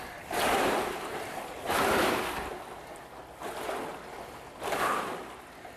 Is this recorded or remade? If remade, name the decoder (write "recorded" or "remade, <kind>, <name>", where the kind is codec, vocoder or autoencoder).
recorded